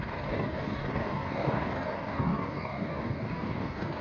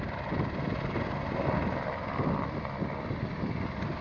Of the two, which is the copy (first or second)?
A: first